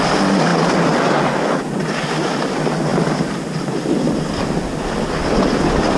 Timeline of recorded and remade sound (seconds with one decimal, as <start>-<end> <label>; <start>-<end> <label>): 0.0-2.9 recorded; 2.9-4.4 remade; 4.4-6.0 recorded